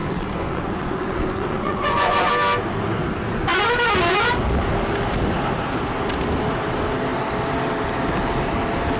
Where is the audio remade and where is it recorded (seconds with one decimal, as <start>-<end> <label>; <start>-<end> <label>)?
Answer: 0.0-2.3 remade; 2.3-9.0 recorded